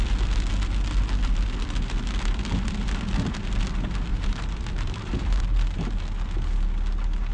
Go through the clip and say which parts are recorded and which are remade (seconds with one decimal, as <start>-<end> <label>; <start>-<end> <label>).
0.0-4.1 recorded; 4.1-5.9 remade; 5.9-7.3 recorded